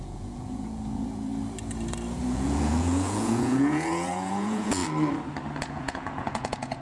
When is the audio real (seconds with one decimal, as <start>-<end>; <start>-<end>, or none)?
1.3-2.2; 4.8-5.6